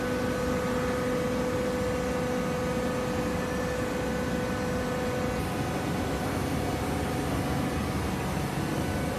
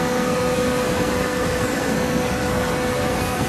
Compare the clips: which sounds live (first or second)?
first